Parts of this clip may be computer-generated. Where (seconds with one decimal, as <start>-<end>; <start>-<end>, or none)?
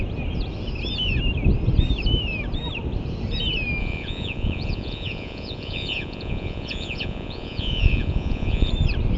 3.8-8.7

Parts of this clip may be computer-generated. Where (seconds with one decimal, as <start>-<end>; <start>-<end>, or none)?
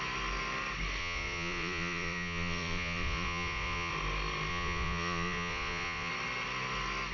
1.0-3.9; 4.5-6.1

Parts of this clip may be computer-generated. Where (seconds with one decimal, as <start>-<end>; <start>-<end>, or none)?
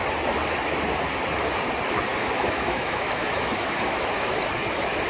2.1-4.3